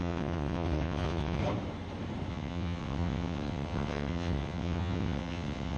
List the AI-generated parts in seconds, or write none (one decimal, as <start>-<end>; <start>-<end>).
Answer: 0.0-1.4; 2.3-5.8